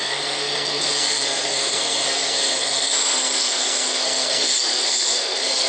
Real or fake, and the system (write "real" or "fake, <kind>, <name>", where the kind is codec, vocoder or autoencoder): fake, codec, SNAC